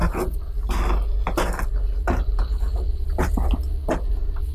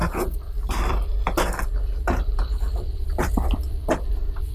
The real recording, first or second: first